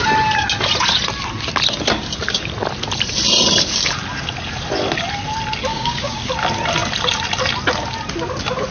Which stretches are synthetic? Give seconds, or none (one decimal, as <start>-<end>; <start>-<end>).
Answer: 5.7-6.3